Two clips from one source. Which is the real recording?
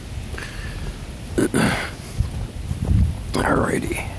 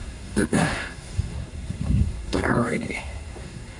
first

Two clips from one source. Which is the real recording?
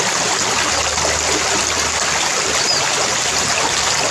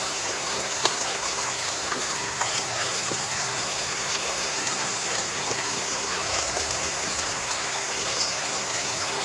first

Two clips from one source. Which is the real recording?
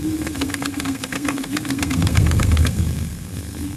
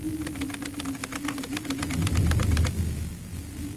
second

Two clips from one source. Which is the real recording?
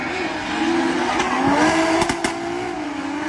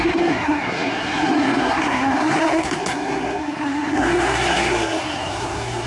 first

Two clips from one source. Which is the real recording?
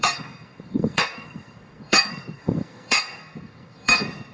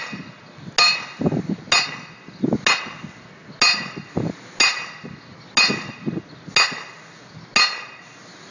second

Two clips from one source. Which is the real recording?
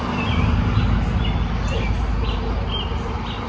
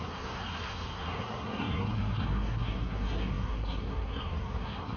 first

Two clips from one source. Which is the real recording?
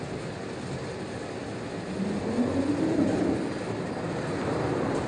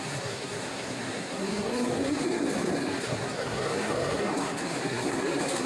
first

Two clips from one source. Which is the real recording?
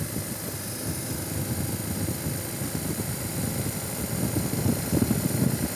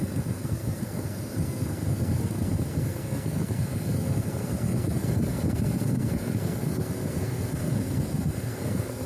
first